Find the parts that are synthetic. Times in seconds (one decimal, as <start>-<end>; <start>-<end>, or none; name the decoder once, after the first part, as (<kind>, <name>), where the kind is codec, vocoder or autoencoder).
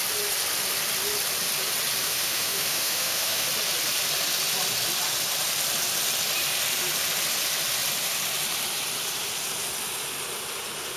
2.0-3.5 (autoencoder, DAC-VAE)